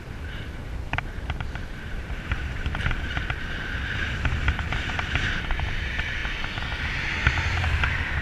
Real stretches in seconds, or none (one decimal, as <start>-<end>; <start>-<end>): 6.2-8.2